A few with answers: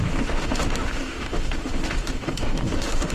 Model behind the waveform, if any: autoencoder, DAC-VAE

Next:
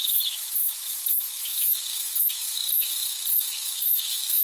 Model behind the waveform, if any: autoencoder, DAC-VAE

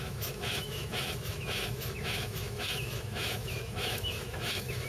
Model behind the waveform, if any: autoencoder, DAC-VAE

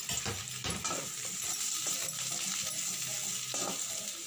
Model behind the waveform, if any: none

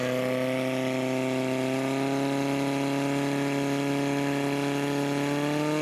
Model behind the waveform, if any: none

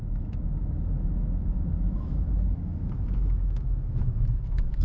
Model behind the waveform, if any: autoencoder, DAC-VAE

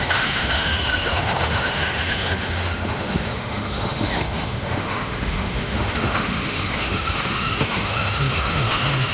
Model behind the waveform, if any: autoencoder, DAC-VAE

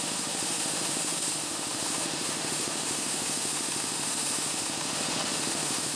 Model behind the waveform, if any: autoencoder, DAC-VAE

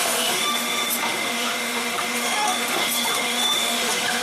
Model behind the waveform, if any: autoencoder, DAC-VAE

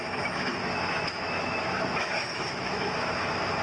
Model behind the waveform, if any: autoencoder, DAC-VAE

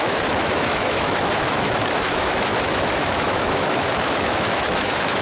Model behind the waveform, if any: autoencoder, DAC-VAE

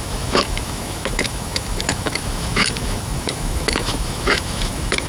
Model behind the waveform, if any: autoencoder, DAC-VAE